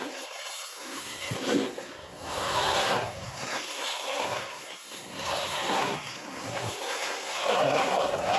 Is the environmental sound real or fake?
fake